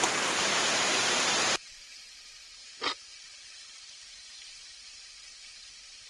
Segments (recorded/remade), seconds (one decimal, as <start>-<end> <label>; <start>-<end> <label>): 0.0-0.7 recorded; 0.7-2.0 remade; 2.0-2.6 recorded; 2.6-4.0 remade; 4.0-6.1 recorded